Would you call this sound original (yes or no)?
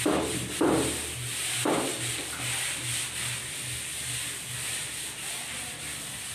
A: no